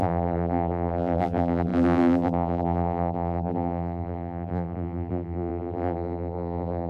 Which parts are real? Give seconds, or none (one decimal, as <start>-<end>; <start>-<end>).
none